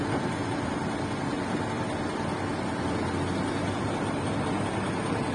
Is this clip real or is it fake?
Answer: real